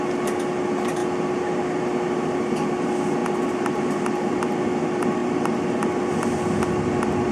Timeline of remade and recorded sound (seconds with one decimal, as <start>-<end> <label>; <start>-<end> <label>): 0.0-7.3 recorded